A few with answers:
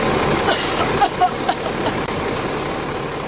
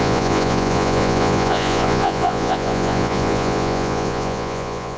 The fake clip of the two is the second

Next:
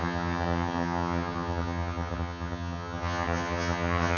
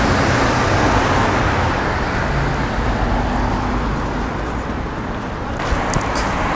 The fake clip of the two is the first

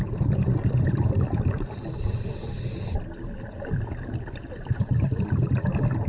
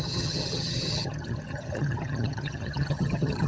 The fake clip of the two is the second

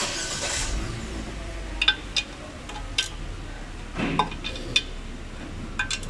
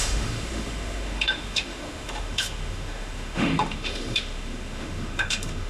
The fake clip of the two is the second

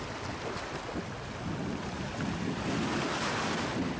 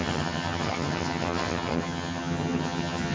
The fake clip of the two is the second